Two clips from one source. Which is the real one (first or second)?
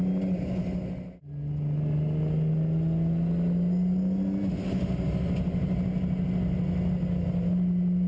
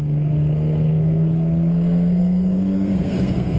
first